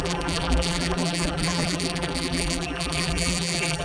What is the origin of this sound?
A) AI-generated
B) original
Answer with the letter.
A